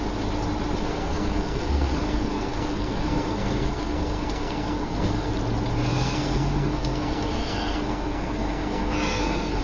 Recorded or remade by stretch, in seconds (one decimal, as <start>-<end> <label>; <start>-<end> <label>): 0.0-0.8 recorded; 0.8-5.3 remade; 5.3-5.9 recorded; 5.9-9.6 remade